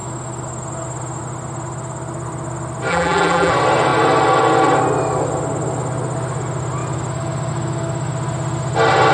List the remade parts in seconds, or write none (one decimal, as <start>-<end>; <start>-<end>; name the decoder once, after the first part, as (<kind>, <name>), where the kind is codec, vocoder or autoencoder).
2.9-3.5 (vocoder, BigVGAN v2)